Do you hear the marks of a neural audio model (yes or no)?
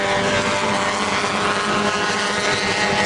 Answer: no